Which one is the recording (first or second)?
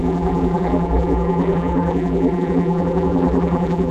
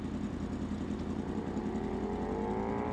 second